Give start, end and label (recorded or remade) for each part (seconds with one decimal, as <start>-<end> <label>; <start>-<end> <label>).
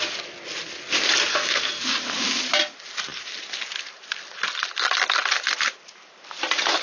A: 0.0-1.3 recorded; 1.3-1.8 remade; 1.8-6.8 recorded